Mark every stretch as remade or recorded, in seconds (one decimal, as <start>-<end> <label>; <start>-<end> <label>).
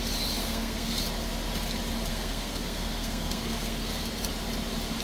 0.0-0.4 recorded; 0.4-1.0 remade; 1.0-2.1 recorded; 2.1-4.1 remade; 4.1-5.0 recorded